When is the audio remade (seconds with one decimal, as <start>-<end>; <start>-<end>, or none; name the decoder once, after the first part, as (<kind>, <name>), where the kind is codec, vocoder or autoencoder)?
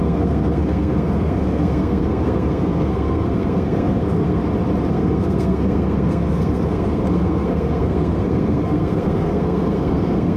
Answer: 0.0-4.4 (codec, SNAC); 4.9-10.4